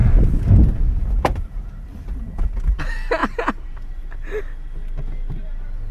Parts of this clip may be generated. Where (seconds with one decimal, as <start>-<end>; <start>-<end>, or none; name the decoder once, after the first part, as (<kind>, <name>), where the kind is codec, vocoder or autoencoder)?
0.0-2.8 (vocoder, BigVGAN v2)